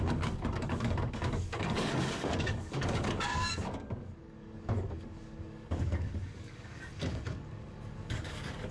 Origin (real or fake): fake